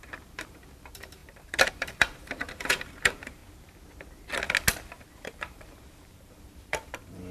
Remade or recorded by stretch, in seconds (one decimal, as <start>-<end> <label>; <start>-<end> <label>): 0.0-3.4 remade; 3.4-5.1 recorded; 5.1-7.3 remade